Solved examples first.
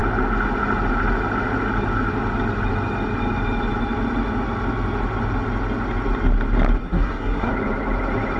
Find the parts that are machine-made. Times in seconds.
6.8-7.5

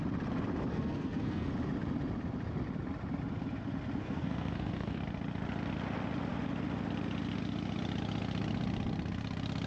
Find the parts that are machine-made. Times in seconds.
0.7-1.5; 4.0-5.0

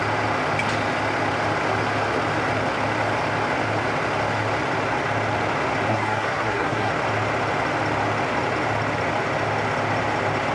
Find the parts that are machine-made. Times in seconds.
5.9-6.9

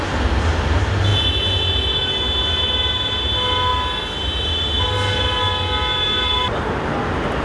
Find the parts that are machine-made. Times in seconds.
none

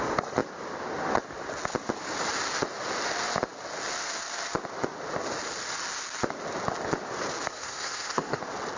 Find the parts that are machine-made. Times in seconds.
7.5-8.4

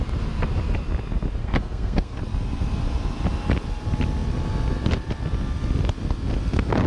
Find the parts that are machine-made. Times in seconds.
1.4-2.2